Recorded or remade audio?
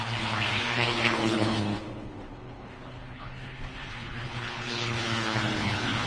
remade